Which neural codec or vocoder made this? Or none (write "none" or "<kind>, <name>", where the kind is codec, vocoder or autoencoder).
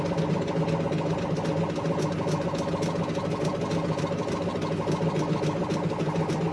none